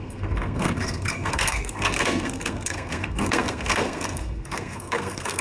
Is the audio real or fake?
fake